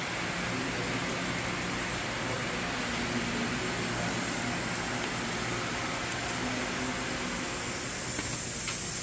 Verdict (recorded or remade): recorded